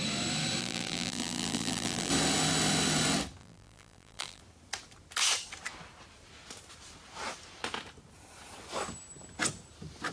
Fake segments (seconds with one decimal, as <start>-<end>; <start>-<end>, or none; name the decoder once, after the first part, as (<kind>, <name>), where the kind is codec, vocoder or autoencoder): 0.6-2.1 (vocoder, BigVGAN v2); 3.4-4.4